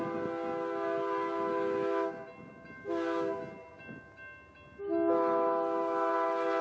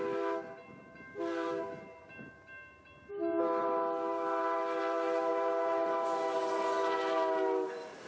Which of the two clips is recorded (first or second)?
first